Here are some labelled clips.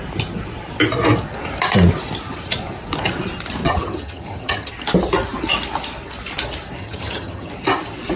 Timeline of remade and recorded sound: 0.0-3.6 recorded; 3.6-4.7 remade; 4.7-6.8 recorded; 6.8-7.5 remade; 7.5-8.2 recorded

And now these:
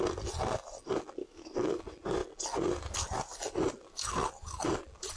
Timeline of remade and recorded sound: 0.0-1.2 recorded; 1.2-1.8 remade; 1.8-5.2 recorded

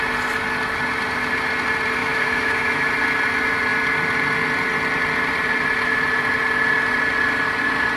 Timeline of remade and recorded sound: 0.0-2.0 recorded; 2.0-2.9 remade; 2.9-8.0 recorded

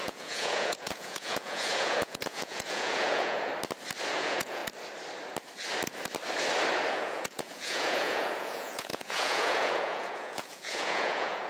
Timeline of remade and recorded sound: 0.0-3.5 remade; 3.5-4.1 recorded; 4.1-4.6 remade; 4.6-6.9 recorded; 6.9-11.5 remade

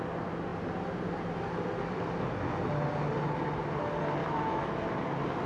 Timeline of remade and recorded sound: 0.0-4.2 recorded; 4.2-4.8 remade; 4.8-5.5 recorded